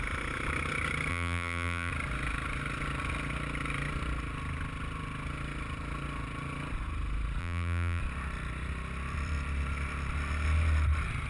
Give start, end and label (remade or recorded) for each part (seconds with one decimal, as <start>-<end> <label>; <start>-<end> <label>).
0.0-1.1 recorded; 1.1-1.9 remade; 1.9-7.4 recorded; 7.4-8.0 remade; 8.0-11.3 recorded